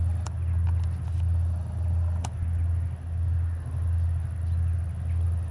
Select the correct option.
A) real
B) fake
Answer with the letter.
A